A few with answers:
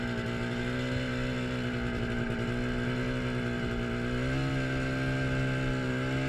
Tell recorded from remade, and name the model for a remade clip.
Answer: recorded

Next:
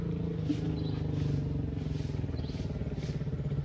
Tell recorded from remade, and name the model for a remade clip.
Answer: recorded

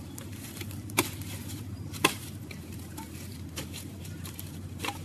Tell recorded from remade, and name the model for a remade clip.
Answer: remade, vocoder, BigVGAN v2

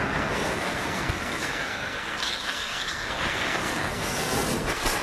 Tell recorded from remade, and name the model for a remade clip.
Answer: remade, codec, SNAC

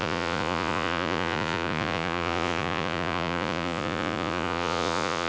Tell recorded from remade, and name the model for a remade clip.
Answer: remade, vocoder, Vocos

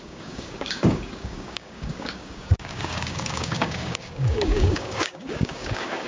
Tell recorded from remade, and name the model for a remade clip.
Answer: remade, codec, DAC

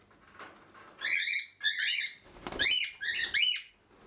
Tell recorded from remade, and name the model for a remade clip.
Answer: recorded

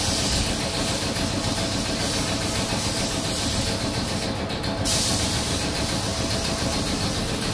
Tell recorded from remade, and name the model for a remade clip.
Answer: recorded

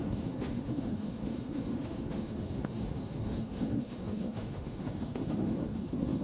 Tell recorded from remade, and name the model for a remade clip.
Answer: remade, autoencoder, DAC-VAE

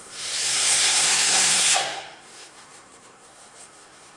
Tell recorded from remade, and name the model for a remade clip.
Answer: remade, codec, SNAC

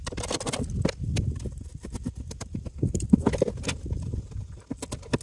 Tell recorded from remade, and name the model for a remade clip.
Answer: recorded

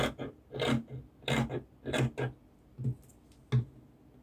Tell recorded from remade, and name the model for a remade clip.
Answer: recorded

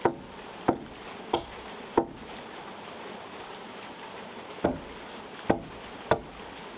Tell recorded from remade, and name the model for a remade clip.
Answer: recorded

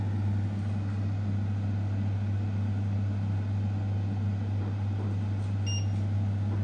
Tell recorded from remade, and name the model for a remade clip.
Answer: recorded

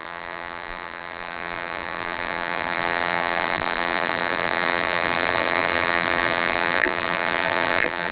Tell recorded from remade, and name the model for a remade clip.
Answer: remade, vocoder, BigVGAN v2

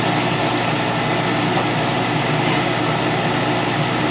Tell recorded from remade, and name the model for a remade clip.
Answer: recorded